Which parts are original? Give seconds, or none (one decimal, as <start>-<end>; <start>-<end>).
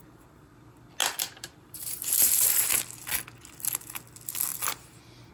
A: 0.5-1.0; 2.8-5.3